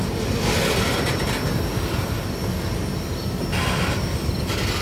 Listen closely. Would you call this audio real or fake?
real